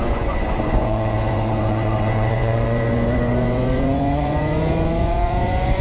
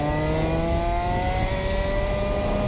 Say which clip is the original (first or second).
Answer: second